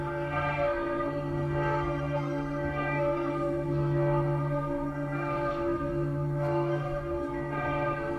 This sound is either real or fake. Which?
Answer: fake